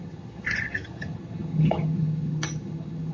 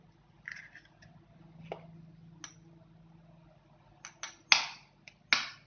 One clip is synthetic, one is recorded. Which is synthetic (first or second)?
first